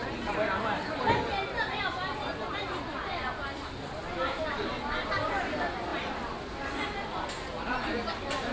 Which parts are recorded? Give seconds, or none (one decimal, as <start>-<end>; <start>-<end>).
0.0-8.5